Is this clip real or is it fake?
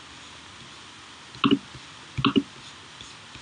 real